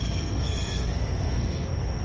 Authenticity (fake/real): fake